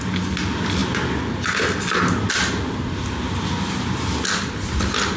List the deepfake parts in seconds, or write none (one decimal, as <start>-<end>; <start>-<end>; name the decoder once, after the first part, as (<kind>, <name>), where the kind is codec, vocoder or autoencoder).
none